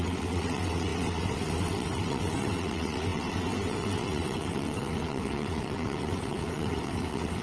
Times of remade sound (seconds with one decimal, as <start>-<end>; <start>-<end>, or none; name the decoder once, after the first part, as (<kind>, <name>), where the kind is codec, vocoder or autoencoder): 0.0-7.4 (vocoder, WaveNeXt)